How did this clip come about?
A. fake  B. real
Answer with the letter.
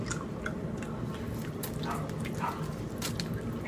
B